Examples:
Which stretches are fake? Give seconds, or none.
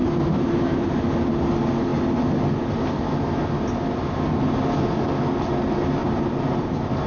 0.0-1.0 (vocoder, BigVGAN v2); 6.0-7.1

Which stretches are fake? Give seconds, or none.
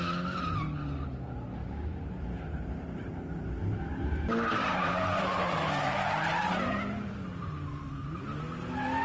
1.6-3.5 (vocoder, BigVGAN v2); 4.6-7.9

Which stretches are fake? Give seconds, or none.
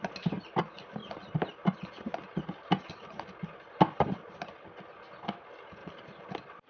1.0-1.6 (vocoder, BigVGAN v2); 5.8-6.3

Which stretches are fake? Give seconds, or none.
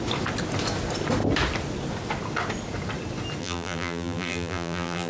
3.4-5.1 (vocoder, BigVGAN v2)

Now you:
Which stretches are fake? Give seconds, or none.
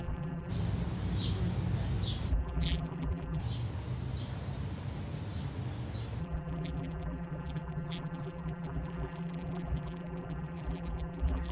0.0-0.5 (vocoder, BigVGAN v2); 2.3-3.4; 6.2-11.5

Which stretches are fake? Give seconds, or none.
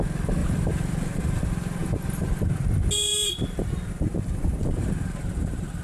0.4-1.4 (vocoder, BigVGAN v2); 4.6-5.8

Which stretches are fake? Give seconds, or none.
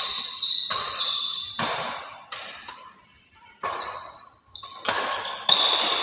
1.3-2.0 (vocoder, BigVGAN v2)